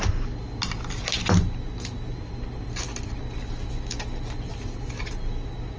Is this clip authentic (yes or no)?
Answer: yes